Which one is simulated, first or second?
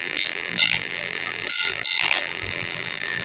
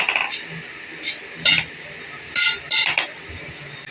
first